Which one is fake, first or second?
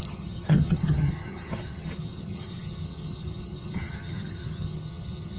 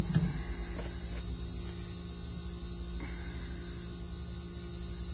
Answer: first